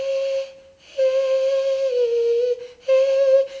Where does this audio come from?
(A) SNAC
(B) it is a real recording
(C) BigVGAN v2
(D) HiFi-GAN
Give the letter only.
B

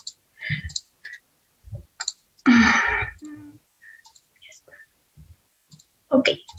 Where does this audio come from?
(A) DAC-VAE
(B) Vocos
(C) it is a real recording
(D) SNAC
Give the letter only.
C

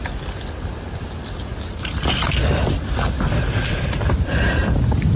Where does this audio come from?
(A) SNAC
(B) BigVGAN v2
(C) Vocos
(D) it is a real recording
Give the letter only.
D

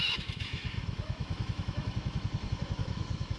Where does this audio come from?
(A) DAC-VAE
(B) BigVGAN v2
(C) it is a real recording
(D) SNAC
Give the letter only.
A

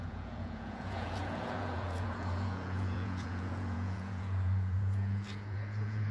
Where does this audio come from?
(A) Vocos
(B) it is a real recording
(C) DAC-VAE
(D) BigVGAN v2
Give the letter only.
A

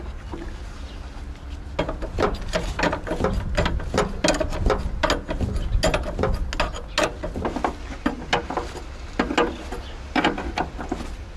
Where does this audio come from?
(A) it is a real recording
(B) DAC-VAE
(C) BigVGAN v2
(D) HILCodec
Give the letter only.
A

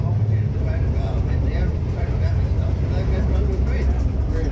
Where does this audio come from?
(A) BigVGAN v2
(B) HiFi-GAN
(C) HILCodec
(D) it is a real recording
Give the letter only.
A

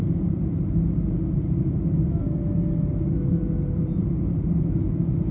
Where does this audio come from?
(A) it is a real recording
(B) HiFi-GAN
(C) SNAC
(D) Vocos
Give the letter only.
A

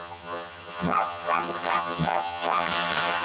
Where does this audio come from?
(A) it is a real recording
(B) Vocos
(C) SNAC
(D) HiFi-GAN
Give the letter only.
D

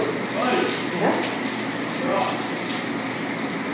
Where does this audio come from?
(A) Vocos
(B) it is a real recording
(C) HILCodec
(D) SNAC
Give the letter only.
B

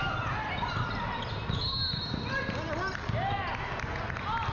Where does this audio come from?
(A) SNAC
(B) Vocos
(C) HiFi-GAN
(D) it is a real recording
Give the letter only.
D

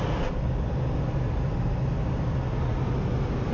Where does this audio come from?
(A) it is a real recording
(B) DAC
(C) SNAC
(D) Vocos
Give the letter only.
A